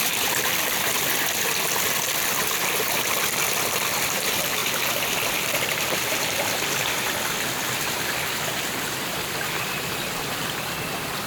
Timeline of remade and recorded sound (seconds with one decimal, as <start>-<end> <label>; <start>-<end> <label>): 0.0-11.3 remade